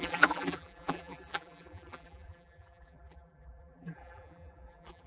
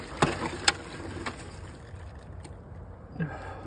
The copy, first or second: first